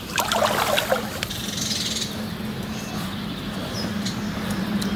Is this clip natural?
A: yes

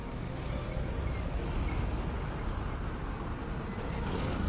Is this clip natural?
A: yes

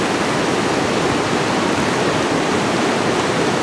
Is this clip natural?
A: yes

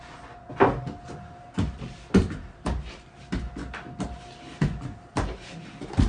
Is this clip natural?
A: yes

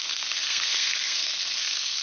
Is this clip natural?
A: no